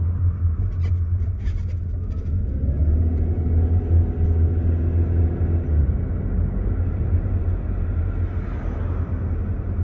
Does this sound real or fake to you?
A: real